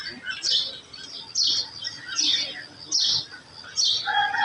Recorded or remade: recorded